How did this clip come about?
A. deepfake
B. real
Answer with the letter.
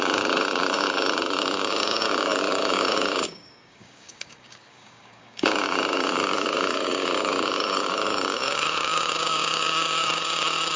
A